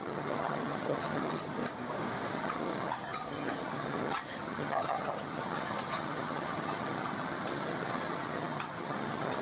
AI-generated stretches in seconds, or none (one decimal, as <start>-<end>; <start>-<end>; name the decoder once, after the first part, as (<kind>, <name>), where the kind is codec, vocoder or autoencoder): 0.0-1.6 (vocoder, HiFi-GAN); 2.3-9.4